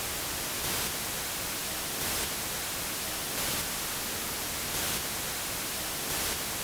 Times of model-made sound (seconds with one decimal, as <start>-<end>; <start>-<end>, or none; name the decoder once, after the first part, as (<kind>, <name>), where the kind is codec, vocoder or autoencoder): none